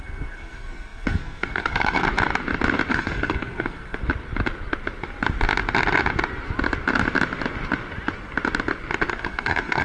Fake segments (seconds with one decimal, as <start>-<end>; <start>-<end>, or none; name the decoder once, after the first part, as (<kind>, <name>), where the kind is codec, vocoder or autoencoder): 0.0-2.0 (codec, SNAC); 2.9-4.0; 9.1-9.8